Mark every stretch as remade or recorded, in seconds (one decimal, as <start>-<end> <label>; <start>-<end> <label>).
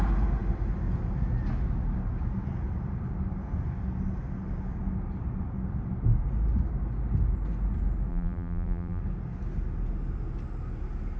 0.0-8.1 recorded; 8.1-9.0 remade; 9.0-11.2 recorded